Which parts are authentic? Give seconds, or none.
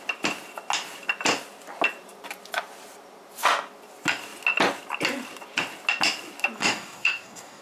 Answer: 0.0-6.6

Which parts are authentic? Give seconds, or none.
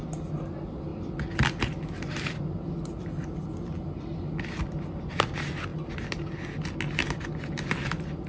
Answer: 0.0-8.3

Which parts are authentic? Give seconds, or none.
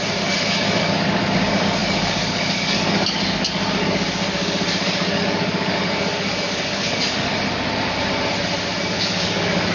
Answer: 7.3-8.8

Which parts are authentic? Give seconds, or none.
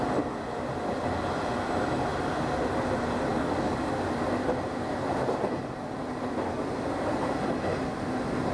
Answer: 0.0-3.3; 3.9-8.5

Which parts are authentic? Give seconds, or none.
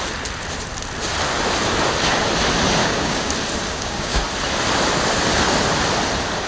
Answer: 0.0-2.8; 3.3-3.7; 4.2-6.5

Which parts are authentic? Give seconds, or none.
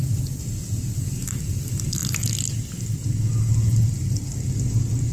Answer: 0.0-5.1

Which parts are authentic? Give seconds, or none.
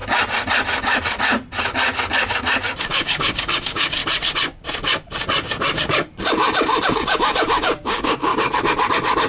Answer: 0.0-2.8; 4.0-6.9; 8.3-9.3